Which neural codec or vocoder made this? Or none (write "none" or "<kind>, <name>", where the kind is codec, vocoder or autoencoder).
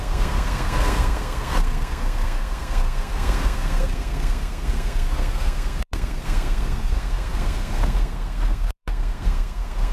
codec, SNAC